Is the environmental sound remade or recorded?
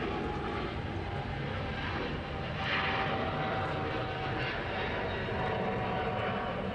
recorded